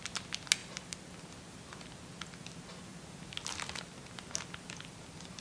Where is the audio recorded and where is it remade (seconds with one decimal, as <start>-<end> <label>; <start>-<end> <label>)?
0.0-5.4 recorded